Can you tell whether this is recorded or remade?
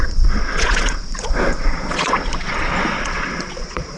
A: remade